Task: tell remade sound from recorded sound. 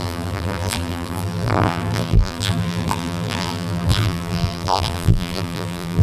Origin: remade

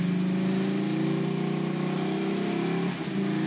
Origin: recorded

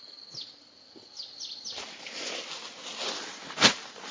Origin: recorded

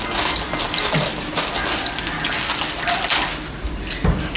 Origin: recorded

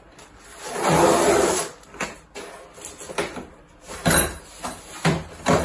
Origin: recorded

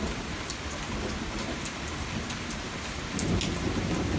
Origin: recorded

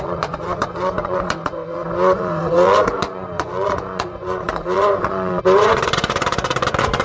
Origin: remade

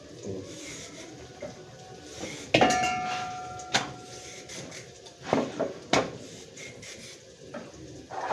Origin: recorded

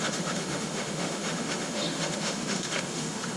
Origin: remade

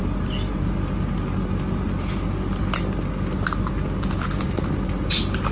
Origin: recorded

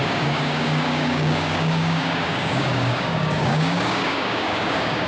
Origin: remade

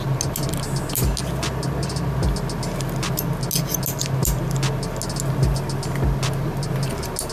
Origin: recorded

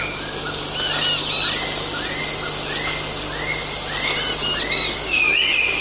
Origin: recorded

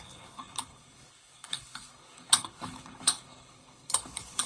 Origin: remade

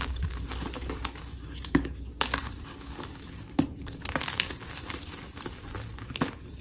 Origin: remade